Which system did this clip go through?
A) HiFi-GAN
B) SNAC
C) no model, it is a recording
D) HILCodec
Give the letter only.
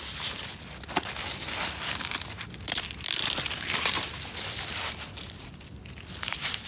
C